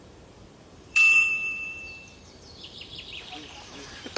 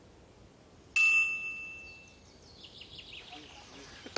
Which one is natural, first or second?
second